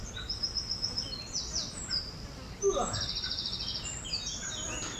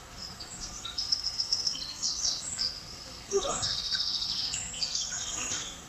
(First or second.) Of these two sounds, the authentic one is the first